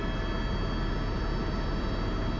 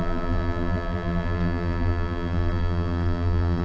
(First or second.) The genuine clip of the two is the first